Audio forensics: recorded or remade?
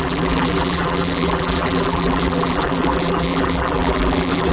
remade